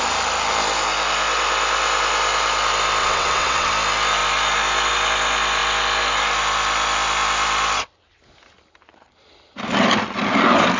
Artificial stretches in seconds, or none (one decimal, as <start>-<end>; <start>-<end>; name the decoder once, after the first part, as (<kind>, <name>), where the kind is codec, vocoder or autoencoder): 3.0-3.7 (vocoder, WaveNeXt)